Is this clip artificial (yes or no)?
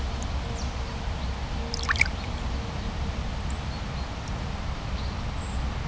yes